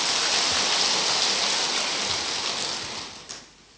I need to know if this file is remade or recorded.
recorded